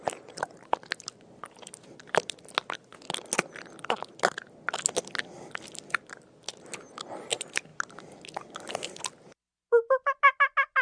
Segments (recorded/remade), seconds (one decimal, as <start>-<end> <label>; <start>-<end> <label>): 0.0-10.8 recorded